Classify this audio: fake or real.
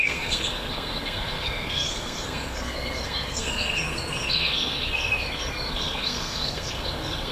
fake